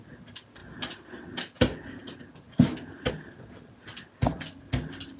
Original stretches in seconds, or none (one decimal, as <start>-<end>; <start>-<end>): 0.0-5.2